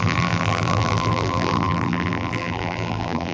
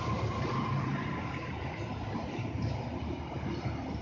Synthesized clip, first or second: first